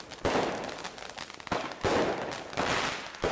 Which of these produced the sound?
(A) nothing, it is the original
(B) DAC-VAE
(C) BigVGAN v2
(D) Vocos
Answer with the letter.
A